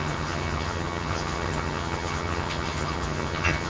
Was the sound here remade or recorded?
remade